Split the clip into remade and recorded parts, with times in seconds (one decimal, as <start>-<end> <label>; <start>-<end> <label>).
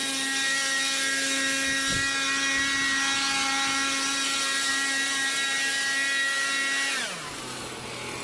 0.0-8.2 recorded